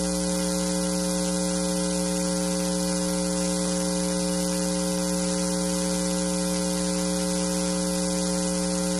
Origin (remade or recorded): recorded